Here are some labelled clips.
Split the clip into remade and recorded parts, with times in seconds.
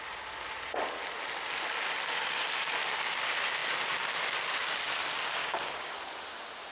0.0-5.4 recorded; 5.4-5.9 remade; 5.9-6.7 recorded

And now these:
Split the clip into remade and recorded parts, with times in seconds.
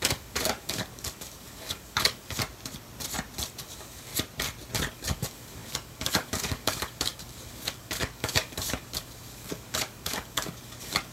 0.0-2.4 remade; 2.4-3.5 recorded; 3.5-4.1 remade; 4.1-4.9 recorded; 4.9-11.1 remade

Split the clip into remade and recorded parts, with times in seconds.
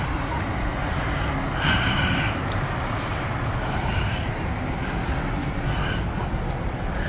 0.0-7.1 recorded